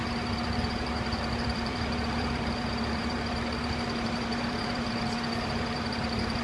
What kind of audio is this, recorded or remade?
remade